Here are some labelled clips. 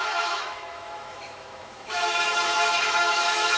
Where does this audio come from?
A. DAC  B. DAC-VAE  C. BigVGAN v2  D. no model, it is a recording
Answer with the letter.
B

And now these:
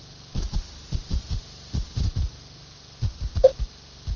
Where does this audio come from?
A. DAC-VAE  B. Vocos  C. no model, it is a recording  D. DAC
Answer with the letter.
C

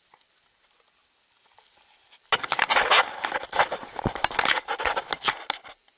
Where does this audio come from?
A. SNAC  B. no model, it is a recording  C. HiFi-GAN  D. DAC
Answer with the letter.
B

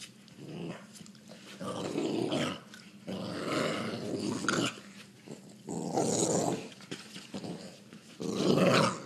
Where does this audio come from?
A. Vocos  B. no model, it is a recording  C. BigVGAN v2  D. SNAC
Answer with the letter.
B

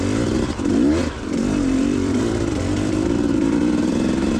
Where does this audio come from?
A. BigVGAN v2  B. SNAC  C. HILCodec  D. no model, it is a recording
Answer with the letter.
A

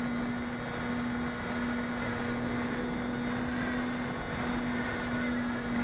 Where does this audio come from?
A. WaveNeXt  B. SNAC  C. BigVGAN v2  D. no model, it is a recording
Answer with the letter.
D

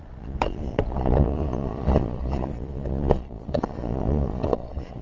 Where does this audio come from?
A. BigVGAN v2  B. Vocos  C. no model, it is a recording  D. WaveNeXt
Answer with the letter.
B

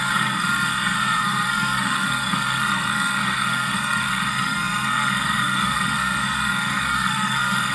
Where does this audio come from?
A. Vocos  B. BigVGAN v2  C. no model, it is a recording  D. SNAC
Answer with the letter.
D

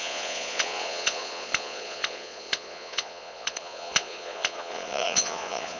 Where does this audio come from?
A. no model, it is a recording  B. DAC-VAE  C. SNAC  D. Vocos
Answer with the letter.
D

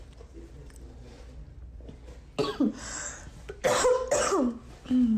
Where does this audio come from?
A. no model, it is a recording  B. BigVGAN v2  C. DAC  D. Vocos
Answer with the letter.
A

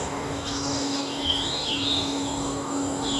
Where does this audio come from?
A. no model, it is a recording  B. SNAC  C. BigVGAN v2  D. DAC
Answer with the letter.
D